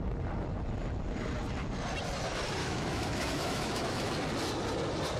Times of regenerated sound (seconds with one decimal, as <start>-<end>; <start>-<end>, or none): 2.6-4.1